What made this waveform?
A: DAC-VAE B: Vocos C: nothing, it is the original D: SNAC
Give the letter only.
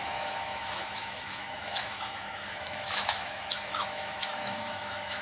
A